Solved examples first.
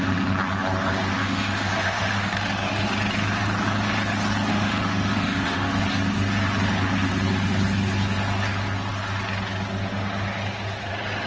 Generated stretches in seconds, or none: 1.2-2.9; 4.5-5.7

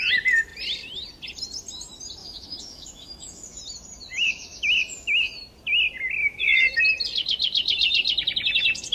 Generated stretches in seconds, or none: 2.2-3.6; 4.1-5.3; 6.2-6.8

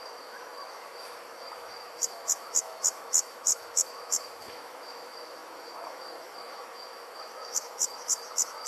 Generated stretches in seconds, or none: 0.0-8.7

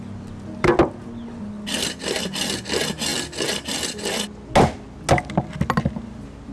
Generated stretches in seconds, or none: none

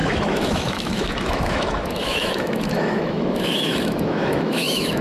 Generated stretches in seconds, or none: 0.0-5.0

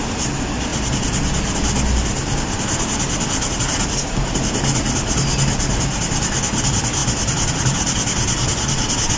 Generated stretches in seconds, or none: none

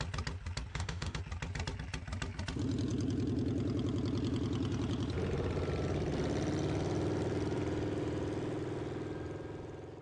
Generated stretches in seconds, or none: 0.7-1.2

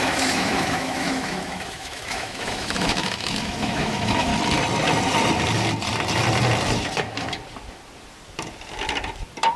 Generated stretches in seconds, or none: 0.0-4.3